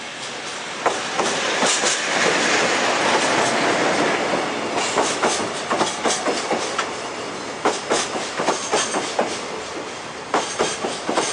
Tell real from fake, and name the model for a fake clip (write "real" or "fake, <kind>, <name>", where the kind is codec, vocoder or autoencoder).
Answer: real